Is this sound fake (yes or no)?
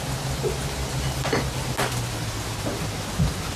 no